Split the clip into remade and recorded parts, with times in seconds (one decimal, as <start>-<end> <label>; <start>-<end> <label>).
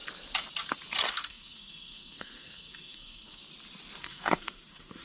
0.0-1.1 recorded; 1.1-3.4 remade; 3.4-4.0 recorded; 4.0-5.0 remade